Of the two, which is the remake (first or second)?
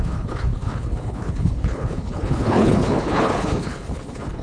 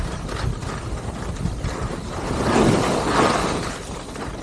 first